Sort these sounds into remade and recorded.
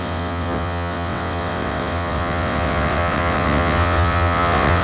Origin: remade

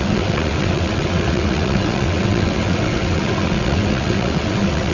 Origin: remade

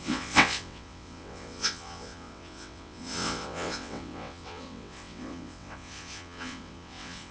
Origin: remade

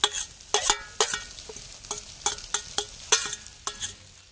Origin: recorded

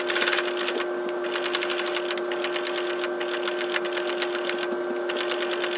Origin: recorded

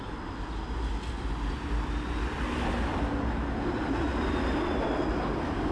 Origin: recorded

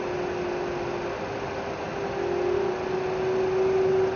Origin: recorded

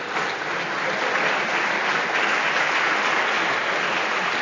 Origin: recorded